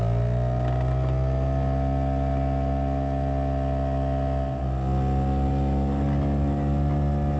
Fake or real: real